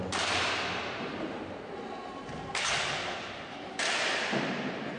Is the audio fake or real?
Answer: fake